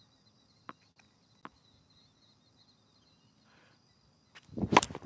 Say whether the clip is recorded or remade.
recorded